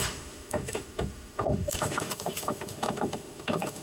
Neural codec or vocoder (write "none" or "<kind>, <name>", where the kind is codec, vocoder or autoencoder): autoencoder, DAC-VAE